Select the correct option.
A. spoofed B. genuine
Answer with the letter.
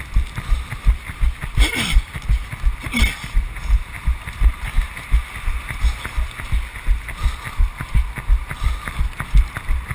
B